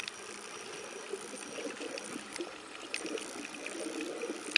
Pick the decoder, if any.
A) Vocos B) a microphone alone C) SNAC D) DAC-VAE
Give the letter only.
B